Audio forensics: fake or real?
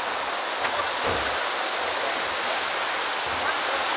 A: real